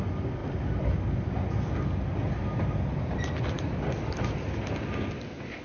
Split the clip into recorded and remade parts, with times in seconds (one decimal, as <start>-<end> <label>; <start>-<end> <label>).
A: 0.0-5.6 recorded